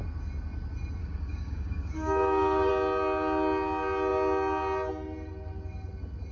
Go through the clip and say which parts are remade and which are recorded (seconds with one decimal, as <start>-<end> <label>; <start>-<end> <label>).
0.0-1.0 recorded; 1.0-2.7 remade; 2.7-6.3 recorded